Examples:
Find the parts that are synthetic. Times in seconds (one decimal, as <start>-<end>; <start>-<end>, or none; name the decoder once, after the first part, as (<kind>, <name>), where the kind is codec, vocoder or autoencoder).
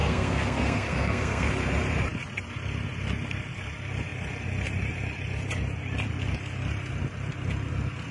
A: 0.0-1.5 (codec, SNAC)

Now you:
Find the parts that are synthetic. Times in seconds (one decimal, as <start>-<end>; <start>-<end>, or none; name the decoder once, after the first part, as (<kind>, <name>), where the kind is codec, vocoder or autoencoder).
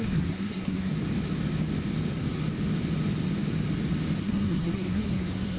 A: 0.0-0.9 (codec, SNAC); 4.2-5.6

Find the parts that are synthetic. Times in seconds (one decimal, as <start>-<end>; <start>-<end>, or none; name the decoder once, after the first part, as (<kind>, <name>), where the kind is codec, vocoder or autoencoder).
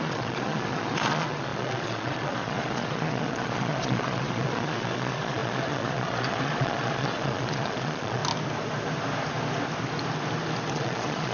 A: 0.0-8.2 (vocoder, Vocos); 10.7-11.3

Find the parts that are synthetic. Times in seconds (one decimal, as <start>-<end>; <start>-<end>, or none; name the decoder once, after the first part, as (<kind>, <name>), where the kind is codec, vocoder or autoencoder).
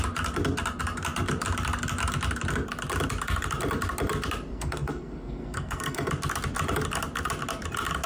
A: 4.5-6.1 (codec, SNAC)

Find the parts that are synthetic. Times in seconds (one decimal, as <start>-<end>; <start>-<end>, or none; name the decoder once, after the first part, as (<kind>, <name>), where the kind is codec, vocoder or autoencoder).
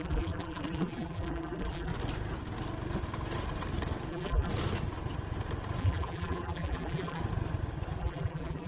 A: 0.0-1.9 (vocoder, BigVGAN v2); 4.1-4.5; 5.8-7.2; 8.0-8.7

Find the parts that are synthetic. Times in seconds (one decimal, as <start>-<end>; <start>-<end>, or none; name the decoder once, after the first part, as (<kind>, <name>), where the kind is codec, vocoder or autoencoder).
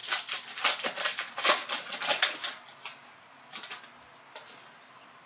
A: 0.9-1.6 (vocoder, BigVGAN v2); 4.8-5.3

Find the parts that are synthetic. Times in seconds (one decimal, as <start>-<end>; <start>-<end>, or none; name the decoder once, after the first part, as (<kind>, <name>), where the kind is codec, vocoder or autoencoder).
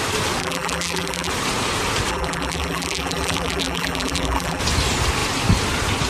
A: 0.4-1.3 (vocoder, BigVGAN v2); 2.1-4.6